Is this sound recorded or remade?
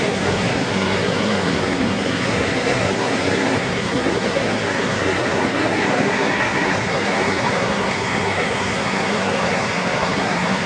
remade